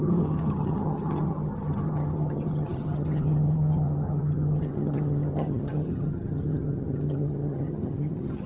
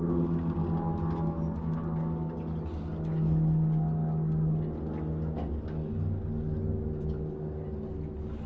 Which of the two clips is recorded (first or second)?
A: second